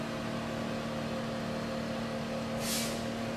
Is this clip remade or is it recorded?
recorded